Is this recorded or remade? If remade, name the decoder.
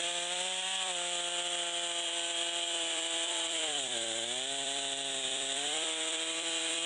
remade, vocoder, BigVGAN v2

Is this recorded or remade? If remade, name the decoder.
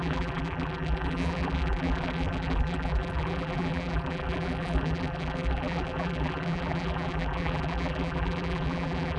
remade, vocoder, BigVGAN v2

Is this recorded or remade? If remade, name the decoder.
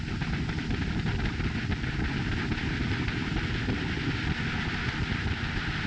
recorded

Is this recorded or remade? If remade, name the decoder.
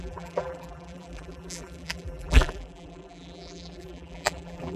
remade, vocoder, BigVGAN v2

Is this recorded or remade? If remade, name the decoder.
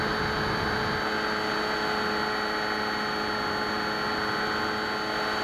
recorded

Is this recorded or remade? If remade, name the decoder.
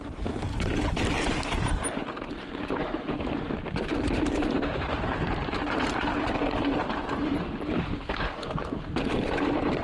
remade, vocoder, BigVGAN v2